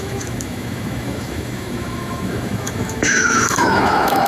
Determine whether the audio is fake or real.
fake